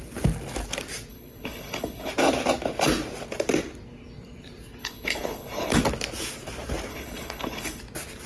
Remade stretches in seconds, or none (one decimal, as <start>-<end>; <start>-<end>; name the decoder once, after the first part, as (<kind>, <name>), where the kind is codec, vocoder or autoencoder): 1.1-2.1 (codec, HILCodec); 4.8-5.8; 6.9-7.8